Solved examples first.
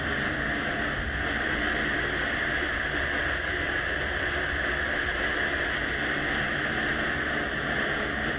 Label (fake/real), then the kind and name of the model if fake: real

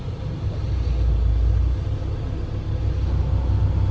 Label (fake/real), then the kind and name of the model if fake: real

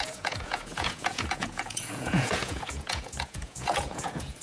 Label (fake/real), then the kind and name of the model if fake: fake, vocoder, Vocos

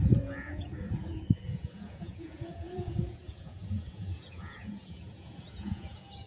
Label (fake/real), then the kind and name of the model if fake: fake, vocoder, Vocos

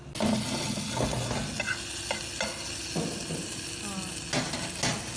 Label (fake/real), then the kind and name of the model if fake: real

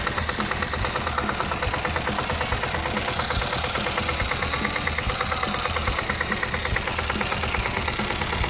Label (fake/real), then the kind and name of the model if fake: real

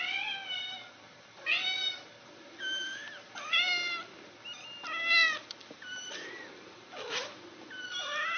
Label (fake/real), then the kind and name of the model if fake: real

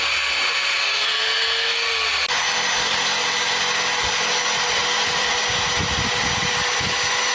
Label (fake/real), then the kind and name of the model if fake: real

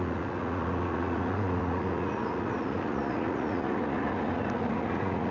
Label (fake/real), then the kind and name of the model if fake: fake, vocoder, Vocos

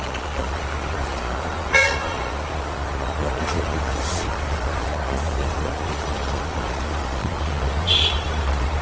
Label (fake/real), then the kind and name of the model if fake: fake, vocoder, Vocos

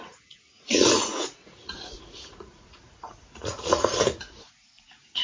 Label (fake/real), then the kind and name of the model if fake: fake, vocoder, Vocos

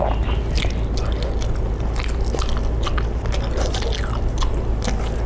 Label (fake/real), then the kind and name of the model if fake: real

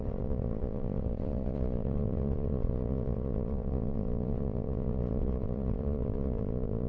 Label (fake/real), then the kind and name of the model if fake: fake, vocoder, Vocos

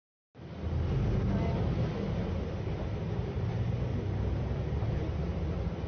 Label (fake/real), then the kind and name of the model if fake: real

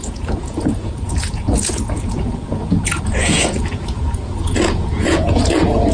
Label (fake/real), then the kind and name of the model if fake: fake, vocoder, Vocos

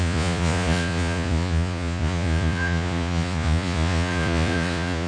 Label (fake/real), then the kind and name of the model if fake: fake, vocoder, Vocos